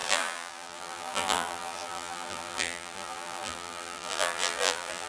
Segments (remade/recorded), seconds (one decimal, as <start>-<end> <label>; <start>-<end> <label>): 0.0-5.1 remade